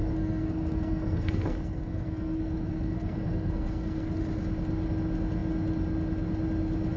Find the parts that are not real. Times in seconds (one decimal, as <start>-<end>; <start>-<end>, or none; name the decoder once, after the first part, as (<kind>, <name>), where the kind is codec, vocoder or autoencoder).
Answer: 0.0-4.2 (codec, SNAC)